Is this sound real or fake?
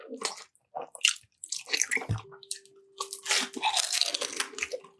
real